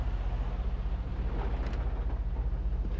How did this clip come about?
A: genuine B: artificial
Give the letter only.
A